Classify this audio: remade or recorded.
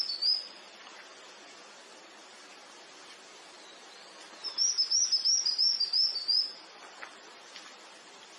recorded